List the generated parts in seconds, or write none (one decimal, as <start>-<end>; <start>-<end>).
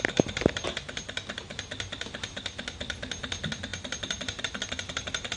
none